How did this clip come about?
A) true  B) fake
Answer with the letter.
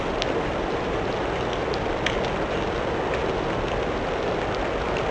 A